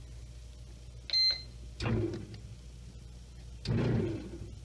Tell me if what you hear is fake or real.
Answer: real